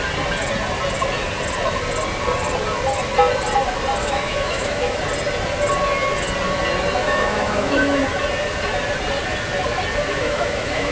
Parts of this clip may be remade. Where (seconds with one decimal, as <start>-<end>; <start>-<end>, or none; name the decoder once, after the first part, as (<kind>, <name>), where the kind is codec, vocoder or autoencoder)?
4.0-5.0 (autoencoder, DAC-VAE); 7.0-8.0; 10.1-10.9